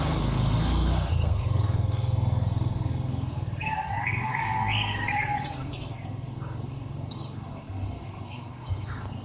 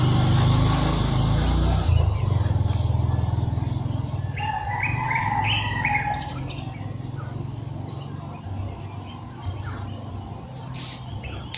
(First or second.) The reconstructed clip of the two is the first